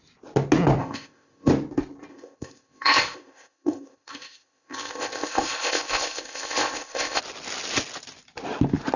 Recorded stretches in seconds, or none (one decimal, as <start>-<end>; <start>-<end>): 0.0-0.8; 1.5-2.1; 7.2-9.0